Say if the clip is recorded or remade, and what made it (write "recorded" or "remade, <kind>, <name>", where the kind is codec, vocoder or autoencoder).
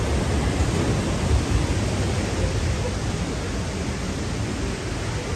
recorded